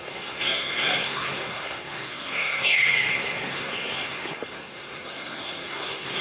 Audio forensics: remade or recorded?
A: remade